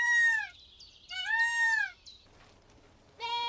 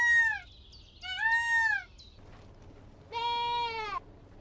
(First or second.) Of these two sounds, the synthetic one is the first